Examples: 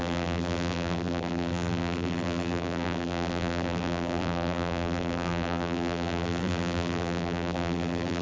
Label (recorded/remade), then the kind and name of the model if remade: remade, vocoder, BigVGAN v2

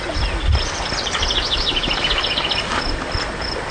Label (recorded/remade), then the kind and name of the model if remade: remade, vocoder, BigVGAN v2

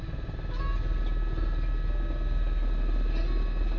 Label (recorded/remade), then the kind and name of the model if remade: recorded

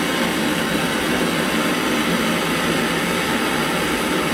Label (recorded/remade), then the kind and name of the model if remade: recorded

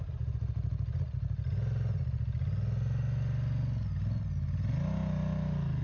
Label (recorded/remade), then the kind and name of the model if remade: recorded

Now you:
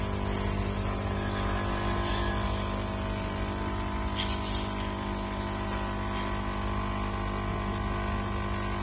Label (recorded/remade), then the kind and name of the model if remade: recorded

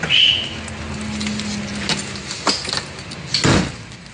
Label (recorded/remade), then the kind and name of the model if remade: recorded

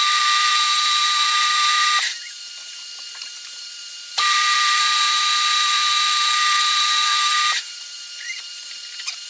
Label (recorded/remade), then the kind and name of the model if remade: remade, vocoder, BigVGAN v2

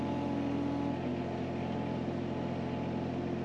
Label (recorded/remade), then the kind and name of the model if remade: recorded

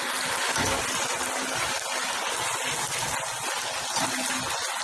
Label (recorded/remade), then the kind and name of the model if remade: recorded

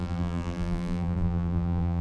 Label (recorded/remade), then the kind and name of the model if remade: remade, vocoder, BigVGAN v2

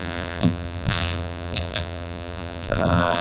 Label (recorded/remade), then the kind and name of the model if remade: remade, vocoder, BigVGAN v2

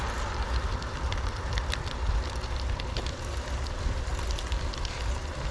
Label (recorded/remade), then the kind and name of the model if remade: remade, vocoder, BigVGAN v2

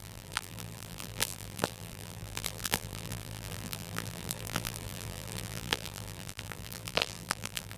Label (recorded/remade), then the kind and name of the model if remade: remade, vocoder, BigVGAN v2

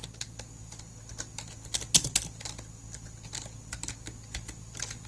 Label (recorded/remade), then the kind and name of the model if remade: recorded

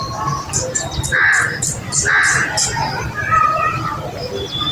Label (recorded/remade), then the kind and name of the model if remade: recorded